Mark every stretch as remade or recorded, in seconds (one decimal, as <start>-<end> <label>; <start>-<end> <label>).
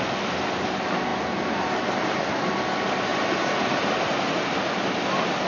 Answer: 0.0-5.5 recorded